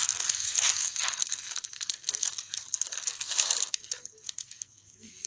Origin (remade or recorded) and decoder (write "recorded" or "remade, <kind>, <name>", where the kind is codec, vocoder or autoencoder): remade, codec, SNAC